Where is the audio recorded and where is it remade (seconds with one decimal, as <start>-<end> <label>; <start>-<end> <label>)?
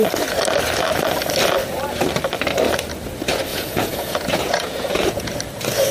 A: 0.0-3.5 recorded; 3.5-5.3 remade; 5.3-5.9 recorded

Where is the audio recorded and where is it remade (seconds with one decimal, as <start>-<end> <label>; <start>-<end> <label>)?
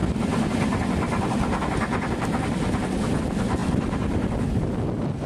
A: 0.0-5.3 recorded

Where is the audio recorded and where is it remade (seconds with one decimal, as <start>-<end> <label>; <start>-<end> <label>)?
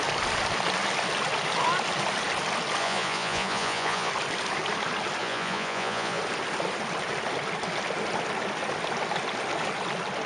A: 0.0-2.8 recorded; 2.8-4.1 remade; 4.1-5.2 recorded; 5.2-6.2 remade; 6.2-10.3 recorded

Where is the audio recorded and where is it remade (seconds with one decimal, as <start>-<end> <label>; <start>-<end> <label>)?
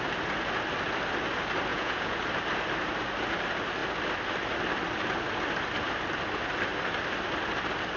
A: 0.0-1.7 recorded; 1.7-2.2 remade; 2.2-8.0 recorded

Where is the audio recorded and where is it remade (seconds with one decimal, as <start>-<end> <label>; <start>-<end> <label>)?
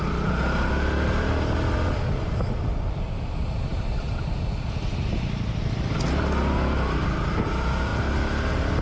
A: 0.0-8.8 recorded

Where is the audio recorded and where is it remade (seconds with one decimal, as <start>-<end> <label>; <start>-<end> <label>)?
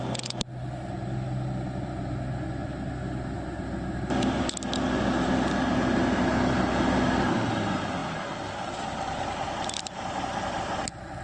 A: 0.0-11.2 recorded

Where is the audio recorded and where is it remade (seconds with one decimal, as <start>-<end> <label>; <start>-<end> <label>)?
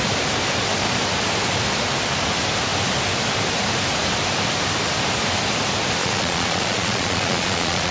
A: 0.0-6.0 recorded; 6.0-7.9 remade